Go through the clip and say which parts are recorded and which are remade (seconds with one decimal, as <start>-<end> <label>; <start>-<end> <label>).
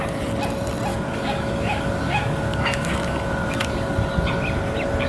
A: 0.0-0.9 recorded; 0.9-4.0 remade; 4.0-5.1 recorded